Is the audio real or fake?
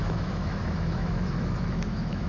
fake